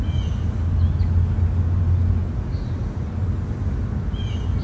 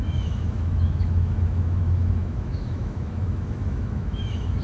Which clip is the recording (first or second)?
first